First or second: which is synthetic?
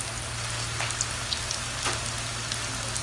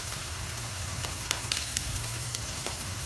second